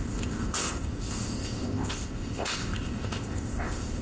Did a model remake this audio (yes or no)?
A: yes